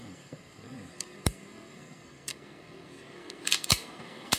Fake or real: fake